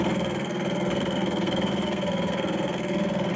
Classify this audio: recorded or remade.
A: remade